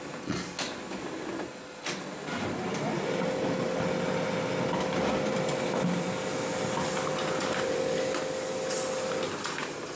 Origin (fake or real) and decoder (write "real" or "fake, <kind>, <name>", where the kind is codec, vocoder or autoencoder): real